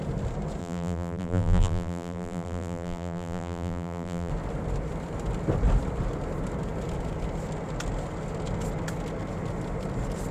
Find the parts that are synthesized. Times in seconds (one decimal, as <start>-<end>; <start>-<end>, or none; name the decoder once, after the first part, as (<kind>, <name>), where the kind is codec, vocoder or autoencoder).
0.6-4.3 (vocoder, BigVGAN v2)